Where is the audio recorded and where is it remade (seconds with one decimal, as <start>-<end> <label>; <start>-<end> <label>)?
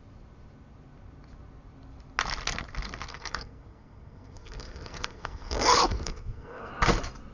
0.0-3.1 recorded; 3.1-6.7 remade; 6.7-7.3 recorded